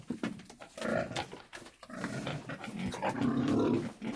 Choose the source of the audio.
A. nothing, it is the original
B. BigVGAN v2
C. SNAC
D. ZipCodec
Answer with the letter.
A